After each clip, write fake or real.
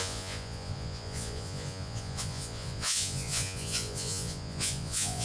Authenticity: fake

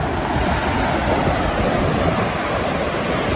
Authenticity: real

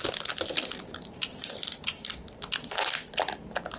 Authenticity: real